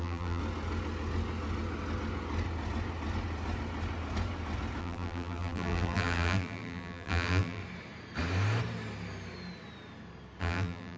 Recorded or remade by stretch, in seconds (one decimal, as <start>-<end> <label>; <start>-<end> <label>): 0.0-0.4 remade; 0.4-4.8 recorded; 4.8-7.6 remade; 7.6-10.4 recorded; 10.4-11.0 remade